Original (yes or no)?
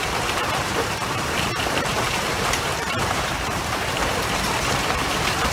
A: no